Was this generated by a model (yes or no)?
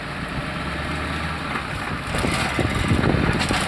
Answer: no